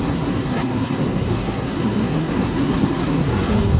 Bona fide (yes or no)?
no